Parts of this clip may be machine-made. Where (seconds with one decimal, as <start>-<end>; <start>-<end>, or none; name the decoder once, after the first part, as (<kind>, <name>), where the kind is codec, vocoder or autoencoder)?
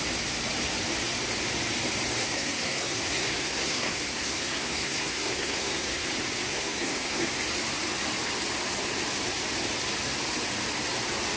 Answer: 2.2-6.1 (codec, SNAC); 6.5-7.3